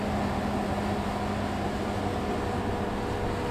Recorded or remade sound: recorded